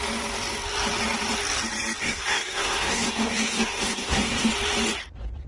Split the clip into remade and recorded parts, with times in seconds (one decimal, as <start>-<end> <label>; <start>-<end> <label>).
0.0-2.0 recorded; 2.0-4.5 remade; 4.5-5.5 recorded